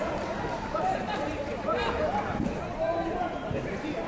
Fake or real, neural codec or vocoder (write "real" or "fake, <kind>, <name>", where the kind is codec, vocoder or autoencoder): fake, vocoder, BigVGAN v2